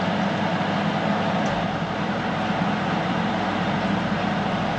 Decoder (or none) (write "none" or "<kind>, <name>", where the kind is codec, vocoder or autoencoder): none